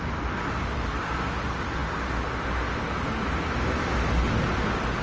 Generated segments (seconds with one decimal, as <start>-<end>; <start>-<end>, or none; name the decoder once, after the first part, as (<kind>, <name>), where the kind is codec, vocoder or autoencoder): none